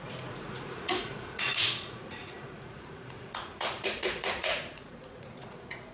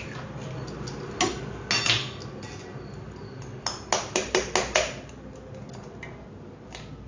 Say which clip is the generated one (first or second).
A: first